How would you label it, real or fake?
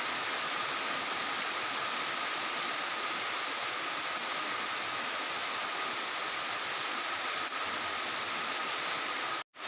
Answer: real